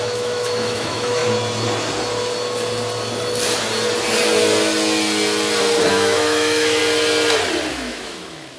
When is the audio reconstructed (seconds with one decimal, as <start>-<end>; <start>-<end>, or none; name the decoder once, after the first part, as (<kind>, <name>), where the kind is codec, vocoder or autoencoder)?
0.0-1.2 (autoencoder, DAC-VAE); 5.9-6.8; 7.7-8.6